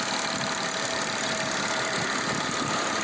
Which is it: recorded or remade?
recorded